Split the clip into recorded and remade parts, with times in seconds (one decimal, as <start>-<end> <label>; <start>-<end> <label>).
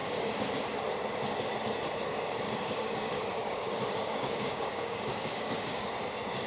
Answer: 0.0-0.5 remade; 0.5-2.1 recorded; 2.1-6.0 remade; 6.0-6.5 recorded